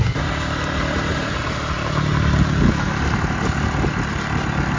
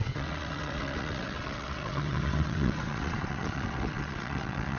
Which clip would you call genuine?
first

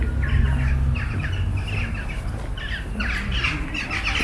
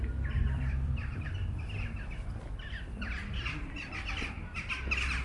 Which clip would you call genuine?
first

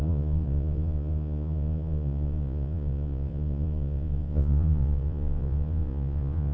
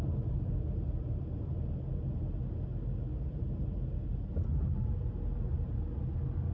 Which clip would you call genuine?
second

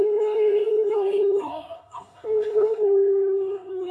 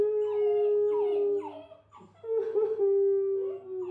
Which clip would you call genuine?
second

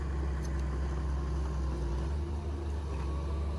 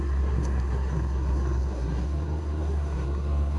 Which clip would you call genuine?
first